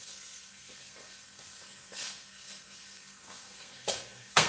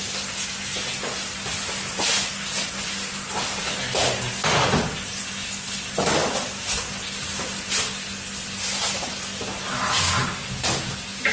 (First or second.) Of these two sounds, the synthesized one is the first